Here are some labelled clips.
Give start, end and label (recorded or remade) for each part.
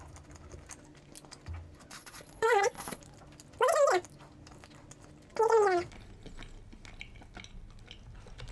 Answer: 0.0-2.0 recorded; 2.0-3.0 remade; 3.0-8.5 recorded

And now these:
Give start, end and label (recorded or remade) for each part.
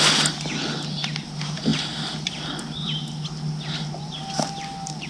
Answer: 0.0-5.1 recorded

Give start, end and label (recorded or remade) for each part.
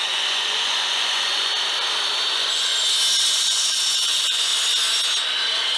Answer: 0.0-1.5 remade; 1.5-2.3 recorded; 2.3-2.7 remade; 2.7-3.3 recorded; 3.3-4.5 remade; 4.5-5.8 recorded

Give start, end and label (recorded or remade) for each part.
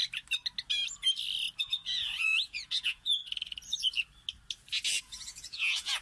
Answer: 0.0-1.6 recorded; 1.6-3.2 remade; 3.2-5.0 recorded; 5.0-6.0 remade